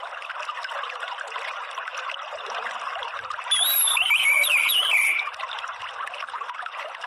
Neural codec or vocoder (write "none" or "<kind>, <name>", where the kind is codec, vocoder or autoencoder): vocoder, BigVGAN v2